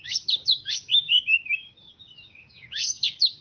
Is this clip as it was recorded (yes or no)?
no